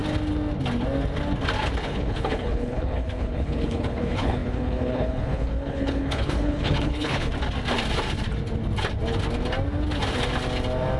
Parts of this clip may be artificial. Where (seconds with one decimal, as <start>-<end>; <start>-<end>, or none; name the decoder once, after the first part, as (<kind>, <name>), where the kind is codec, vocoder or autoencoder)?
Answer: 1.8-7.3 (codec, HILCodec)